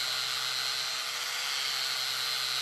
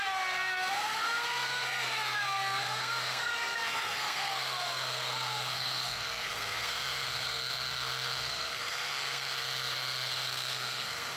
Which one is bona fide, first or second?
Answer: first